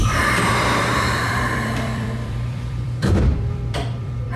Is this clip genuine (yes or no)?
no